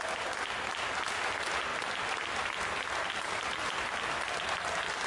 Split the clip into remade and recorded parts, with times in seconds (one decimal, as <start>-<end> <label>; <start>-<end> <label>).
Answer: 0.0-5.1 recorded